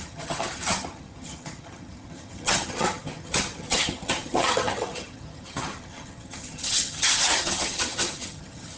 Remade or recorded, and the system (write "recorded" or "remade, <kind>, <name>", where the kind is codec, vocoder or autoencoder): remade, vocoder, HiFi-GAN